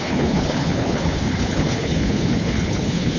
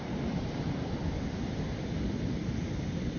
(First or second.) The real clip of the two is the second